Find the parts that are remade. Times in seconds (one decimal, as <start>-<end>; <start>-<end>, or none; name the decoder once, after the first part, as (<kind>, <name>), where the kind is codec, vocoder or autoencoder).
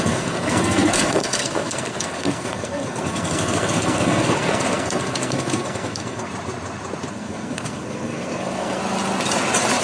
0.0-6.3 (codec, SNAC); 7.1-8.8